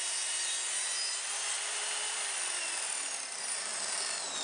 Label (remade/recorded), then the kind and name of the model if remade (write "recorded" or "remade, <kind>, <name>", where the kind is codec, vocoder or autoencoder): recorded